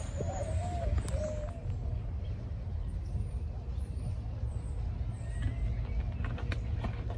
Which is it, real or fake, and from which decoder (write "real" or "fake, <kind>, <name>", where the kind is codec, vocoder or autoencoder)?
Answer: real